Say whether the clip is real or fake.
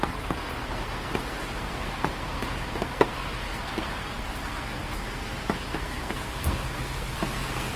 fake